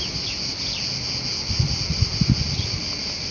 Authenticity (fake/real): real